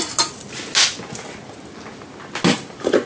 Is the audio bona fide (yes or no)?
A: yes